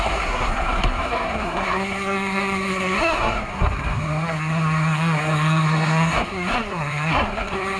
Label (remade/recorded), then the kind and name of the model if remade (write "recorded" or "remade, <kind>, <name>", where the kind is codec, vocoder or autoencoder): remade, codec, SNAC